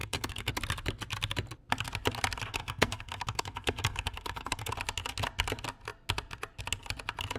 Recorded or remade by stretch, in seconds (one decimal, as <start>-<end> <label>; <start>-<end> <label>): 0.0-0.5 remade; 0.5-2.5 recorded; 2.5-4.7 remade; 4.7-7.4 recorded